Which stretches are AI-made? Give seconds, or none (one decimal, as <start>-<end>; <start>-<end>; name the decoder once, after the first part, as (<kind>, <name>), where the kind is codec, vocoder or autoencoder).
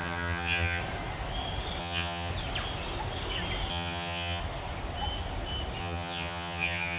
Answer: 0.0-0.8 (vocoder, HiFi-GAN); 1.8-2.3; 3.7-4.4; 5.8-7.0